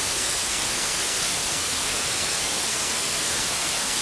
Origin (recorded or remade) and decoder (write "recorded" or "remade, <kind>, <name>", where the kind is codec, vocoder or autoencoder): remade, codec, SNAC